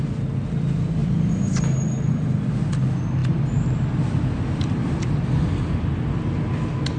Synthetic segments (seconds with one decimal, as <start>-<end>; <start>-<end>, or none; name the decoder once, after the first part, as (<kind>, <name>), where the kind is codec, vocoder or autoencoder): 1.0-2.1 (vocoder, BigVGAN v2); 3.2-5.5